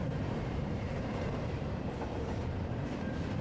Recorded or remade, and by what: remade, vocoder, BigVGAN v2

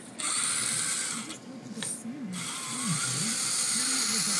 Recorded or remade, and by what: recorded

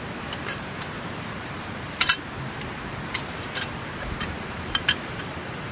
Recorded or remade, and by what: remade, vocoder, BigVGAN v2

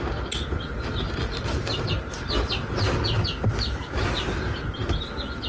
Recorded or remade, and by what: recorded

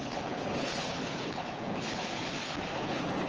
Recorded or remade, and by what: remade, codec, HILCodec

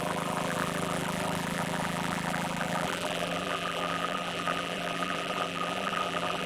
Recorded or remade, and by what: remade, vocoder, BigVGAN v2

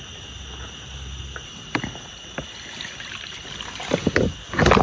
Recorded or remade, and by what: recorded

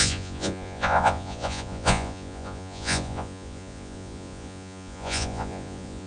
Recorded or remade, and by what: remade, vocoder, Vocos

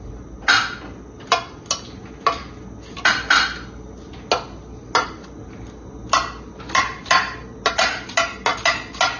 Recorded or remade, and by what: recorded